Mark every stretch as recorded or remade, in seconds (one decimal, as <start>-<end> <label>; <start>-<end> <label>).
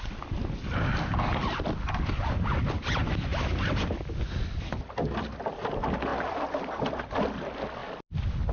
0.0-8.5 recorded